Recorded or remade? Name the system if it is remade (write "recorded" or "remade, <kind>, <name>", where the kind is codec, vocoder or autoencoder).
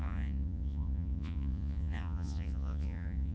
remade, vocoder, Vocos